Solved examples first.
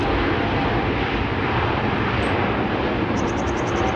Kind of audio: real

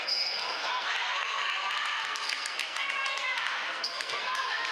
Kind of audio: fake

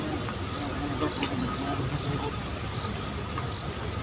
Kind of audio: real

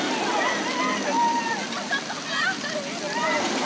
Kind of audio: real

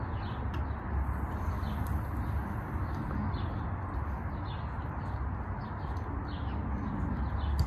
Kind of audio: real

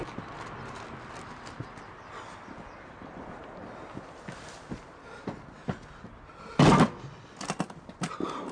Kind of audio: real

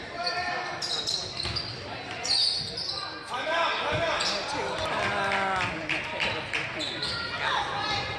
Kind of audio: real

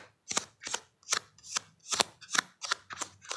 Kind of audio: real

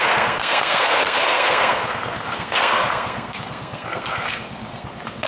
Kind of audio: fake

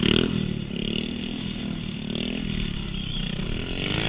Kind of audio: real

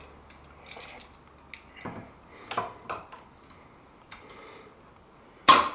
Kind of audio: real